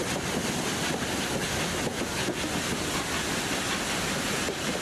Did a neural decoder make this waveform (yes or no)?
no